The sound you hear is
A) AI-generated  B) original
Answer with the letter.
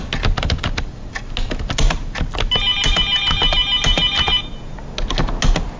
B